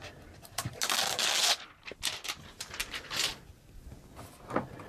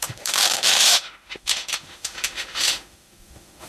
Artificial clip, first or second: second